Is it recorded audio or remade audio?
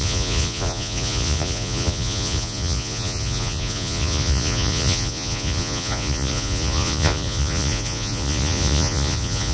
remade